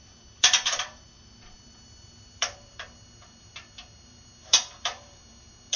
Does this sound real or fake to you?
fake